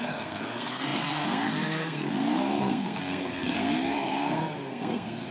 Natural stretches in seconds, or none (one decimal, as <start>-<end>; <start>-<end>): none